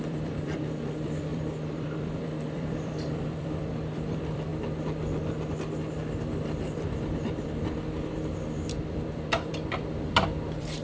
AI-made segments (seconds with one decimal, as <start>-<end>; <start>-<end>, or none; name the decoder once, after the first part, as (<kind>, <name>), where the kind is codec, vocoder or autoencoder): 0.0-4.5 (vocoder, BigVGAN v2); 6.4-10.8